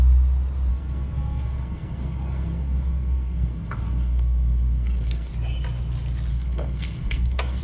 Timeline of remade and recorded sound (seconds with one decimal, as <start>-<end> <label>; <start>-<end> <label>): 0.0-0.7 recorded; 0.7-5.3 remade; 5.3-6.3 recorded; 6.3-7.6 remade